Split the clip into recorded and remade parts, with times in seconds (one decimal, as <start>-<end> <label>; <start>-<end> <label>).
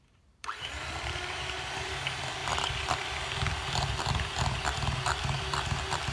0.0-6.1 remade